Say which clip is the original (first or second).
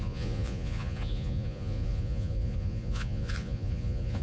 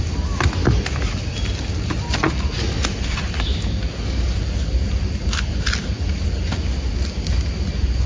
second